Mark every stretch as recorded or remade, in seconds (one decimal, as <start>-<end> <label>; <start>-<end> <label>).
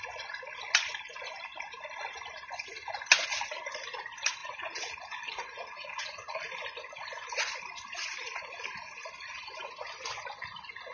0.0-4.4 recorded; 4.4-6.4 remade; 6.4-10.9 recorded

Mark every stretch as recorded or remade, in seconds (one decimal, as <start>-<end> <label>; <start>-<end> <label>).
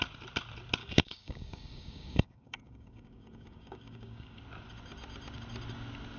0.0-0.8 recorded; 0.8-4.4 remade; 4.4-6.2 recorded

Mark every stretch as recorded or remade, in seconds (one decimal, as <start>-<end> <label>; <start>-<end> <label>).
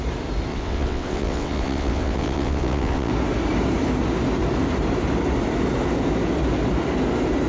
0.0-0.5 recorded; 0.5-3.1 remade; 3.1-7.5 recorded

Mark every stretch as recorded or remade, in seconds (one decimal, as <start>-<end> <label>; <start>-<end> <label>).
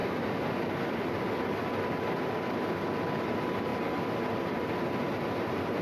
0.0-3.7 recorded; 3.7-4.7 remade; 4.7-5.8 recorded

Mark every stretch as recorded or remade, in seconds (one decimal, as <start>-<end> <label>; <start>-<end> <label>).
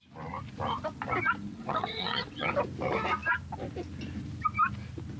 0.0-1.5 recorded; 1.5-2.5 remade; 2.5-5.2 recorded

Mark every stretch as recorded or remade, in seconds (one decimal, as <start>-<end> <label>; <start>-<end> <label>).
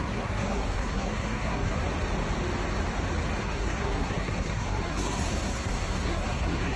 0.0-1.8 remade; 1.8-3.4 recorded; 3.4-6.8 remade